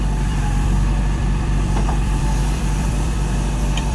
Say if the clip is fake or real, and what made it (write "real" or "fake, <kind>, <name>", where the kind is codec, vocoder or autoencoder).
fake, vocoder, BigVGAN v2